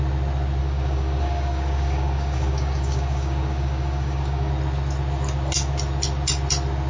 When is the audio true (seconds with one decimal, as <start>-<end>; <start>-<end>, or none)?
0.0-0.6; 4.5-6.9